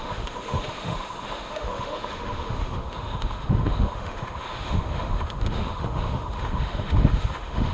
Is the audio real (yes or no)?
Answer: no